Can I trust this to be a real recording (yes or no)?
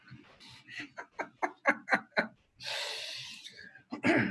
yes